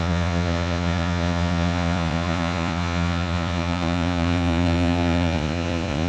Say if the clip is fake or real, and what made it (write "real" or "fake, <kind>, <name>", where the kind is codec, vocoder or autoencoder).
fake, vocoder, Vocos